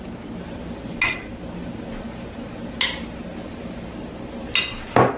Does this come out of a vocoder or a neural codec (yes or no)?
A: no